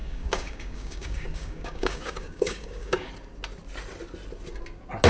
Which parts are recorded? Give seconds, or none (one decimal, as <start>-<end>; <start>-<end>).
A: 3.1-5.1